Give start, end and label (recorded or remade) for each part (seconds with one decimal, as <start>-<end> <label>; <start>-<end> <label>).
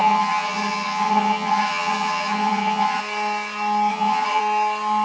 0.0-3.0 remade; 3.0-3.9 recorded; 3.9-4.4 remade; 4.4-5.0 recorded